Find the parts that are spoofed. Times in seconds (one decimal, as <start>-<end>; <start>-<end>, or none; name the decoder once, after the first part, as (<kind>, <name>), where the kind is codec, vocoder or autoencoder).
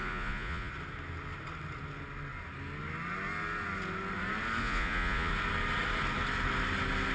0.0-0.7 (vocoder, Vocos); 4.6-5.3